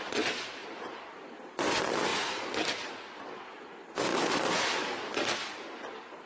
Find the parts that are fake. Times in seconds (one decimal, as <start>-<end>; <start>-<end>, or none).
0.6-1.3; 4.1-5.1